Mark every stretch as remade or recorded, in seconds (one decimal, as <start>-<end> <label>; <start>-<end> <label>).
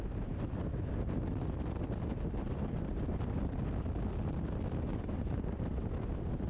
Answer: 0.0-4.9 recorded; 4.9-5.6 remade; 5.6-6.5 recorded